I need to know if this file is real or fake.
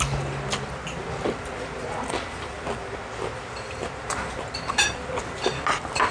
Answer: real